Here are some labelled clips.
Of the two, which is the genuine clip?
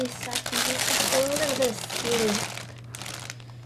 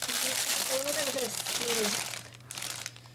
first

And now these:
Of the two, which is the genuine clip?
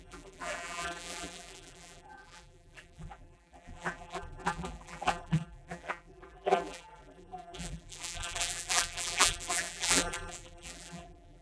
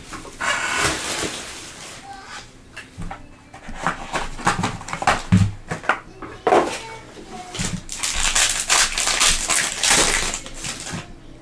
second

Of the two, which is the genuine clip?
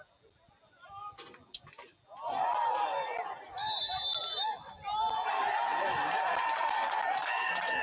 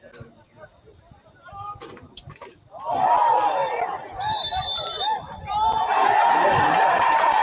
first